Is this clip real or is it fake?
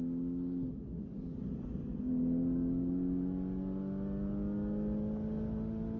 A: real